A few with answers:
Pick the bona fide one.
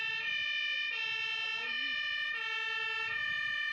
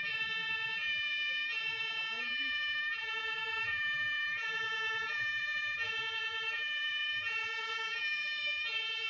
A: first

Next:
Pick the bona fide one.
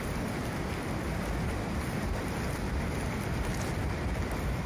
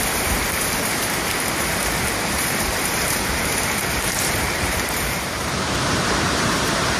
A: first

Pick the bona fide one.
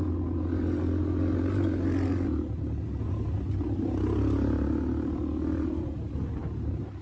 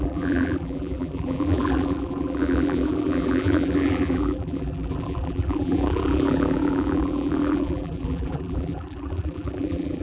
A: first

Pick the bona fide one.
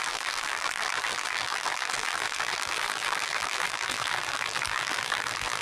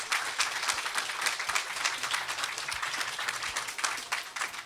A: second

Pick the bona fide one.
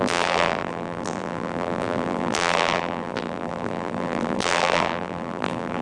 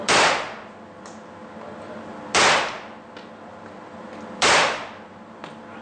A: second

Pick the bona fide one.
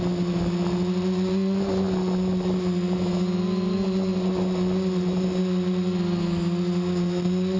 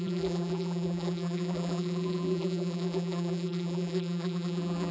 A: first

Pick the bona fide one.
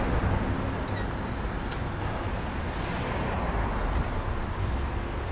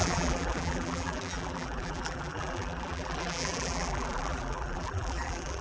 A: first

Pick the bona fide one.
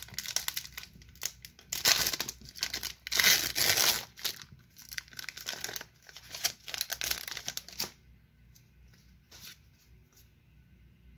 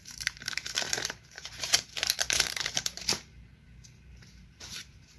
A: first